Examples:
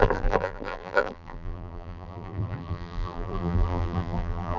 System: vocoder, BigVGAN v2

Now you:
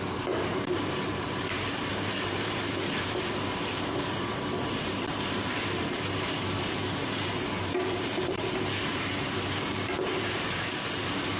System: vocoder, BigVGAN v2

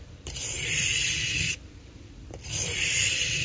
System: vocoder, BigVGAN v2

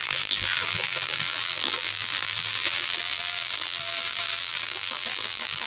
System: vocoder, BigVGAN v2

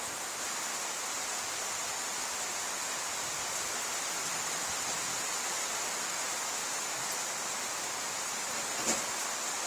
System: none